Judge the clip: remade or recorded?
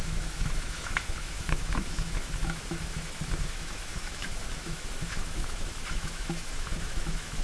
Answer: remade